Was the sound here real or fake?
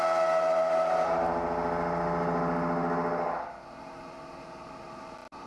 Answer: real